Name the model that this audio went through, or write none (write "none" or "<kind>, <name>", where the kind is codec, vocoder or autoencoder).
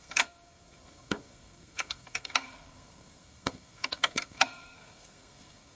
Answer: codec, SNAC